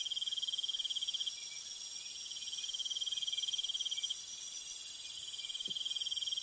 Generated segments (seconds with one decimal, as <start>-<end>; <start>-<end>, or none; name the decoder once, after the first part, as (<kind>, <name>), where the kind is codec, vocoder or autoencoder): 2.8-5.8 (vocoder, BigVGAN v2)